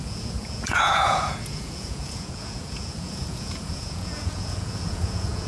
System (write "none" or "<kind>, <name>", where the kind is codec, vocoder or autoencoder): vocoder, Vocos